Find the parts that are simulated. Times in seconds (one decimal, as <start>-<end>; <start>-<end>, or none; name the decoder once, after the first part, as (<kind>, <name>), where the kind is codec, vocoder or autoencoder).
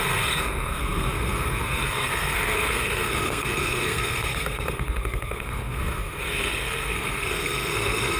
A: 0.0-8.2 (codec, SNAC)